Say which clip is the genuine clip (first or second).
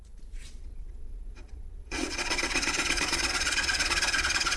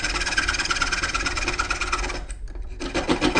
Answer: second